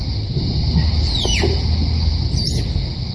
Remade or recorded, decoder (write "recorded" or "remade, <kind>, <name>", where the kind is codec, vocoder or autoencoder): recorded